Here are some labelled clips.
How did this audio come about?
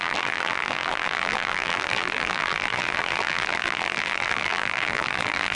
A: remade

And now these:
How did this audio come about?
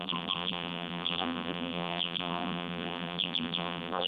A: remade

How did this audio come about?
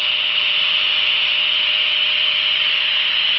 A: recorded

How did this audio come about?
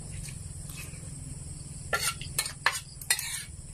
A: remade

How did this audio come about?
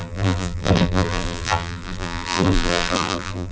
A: remade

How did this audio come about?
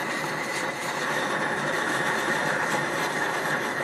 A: remade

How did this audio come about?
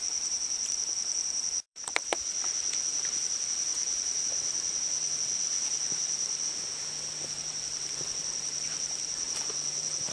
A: remade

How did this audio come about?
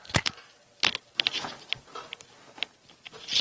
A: recorded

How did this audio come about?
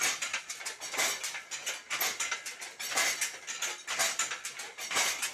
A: recorded